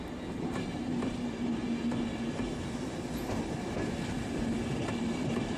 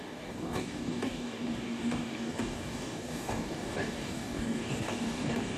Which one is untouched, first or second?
first